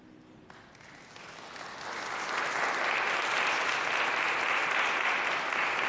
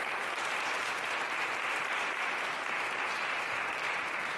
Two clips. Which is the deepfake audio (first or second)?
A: second